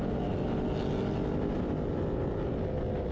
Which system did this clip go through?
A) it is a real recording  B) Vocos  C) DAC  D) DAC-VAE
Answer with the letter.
A